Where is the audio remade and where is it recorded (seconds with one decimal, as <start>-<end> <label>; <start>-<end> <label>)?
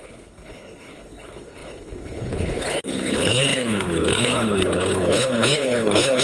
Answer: 0.0-6.2 remade